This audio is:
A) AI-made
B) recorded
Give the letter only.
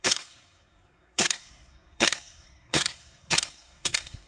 A